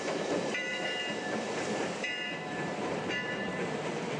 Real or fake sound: fake